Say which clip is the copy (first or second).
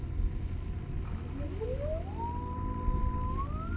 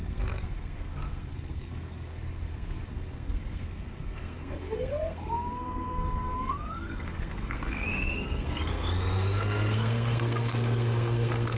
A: second